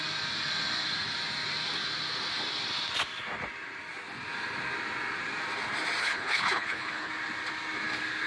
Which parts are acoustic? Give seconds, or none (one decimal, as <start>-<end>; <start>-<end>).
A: 0.0-6.0; 7.1-8.3